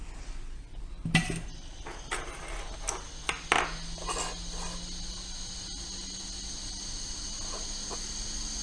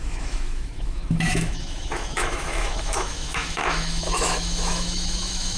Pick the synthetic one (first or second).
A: second